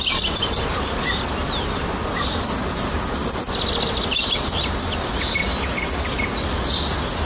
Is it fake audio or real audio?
real